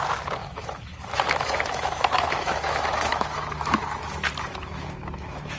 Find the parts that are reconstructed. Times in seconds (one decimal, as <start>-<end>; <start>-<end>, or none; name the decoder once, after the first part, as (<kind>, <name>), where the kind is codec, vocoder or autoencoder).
0.4-3.8 (autoencoder, DAC-VAE); 4.5-5.6